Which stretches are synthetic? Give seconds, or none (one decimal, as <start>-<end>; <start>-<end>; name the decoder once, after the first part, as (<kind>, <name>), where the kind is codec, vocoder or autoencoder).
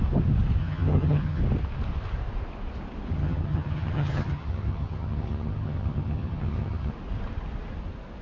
0.6-1.4 (vocoder, HiFi-GAN); 3.1-6.9